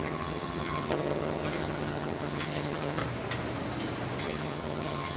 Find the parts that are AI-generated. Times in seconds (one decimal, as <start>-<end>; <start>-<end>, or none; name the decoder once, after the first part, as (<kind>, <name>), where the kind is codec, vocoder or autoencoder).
0.0-3.0 (vocoder, HiFi-GAN); 4.2-5.2